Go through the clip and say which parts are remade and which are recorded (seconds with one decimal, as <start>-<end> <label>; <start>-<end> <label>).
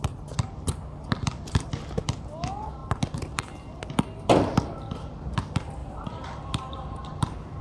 0.0-5.8 recorded; 5.8-7.1 remade; 7.1-7.6 recorded